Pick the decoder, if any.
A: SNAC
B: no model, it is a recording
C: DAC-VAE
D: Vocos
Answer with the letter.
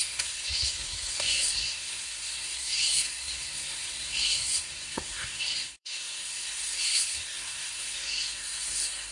A